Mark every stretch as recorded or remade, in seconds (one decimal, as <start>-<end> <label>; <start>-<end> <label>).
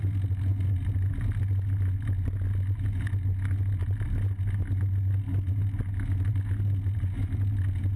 0.0-8.0 recorded